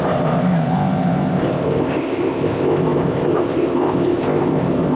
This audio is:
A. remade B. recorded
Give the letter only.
A